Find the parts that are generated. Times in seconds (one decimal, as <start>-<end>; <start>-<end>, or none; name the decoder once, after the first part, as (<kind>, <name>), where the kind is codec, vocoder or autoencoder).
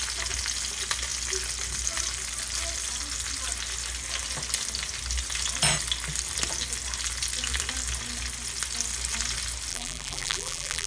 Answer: 9.7-10.9 (vocoder, BigVGAN v2)